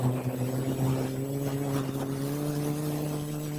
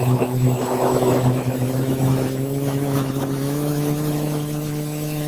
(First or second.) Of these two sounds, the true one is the first